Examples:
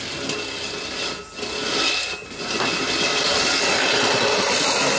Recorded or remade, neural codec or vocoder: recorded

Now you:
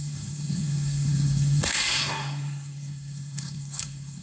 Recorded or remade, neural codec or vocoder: remade, codec, SNAC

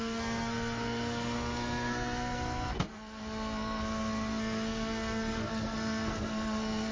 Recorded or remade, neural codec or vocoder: remade, codec, SNAC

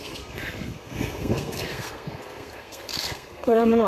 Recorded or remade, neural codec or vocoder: remade, codec, SNAC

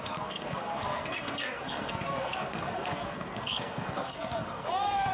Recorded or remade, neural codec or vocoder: remade, codec, SNAC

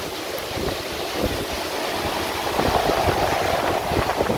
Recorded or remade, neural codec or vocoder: recorded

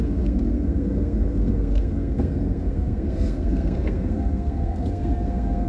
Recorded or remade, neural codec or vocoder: remade, codec, SNAC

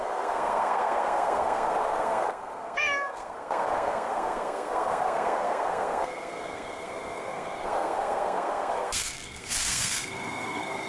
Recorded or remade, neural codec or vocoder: remade, codec, SNAC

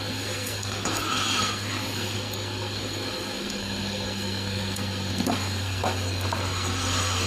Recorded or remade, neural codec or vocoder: remade, codec, SNAC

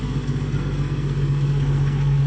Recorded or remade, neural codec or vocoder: remade, codec, SNAC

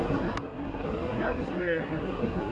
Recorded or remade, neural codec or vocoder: remade, codec, SNAC